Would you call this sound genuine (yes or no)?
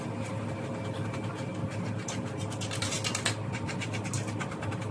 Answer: yes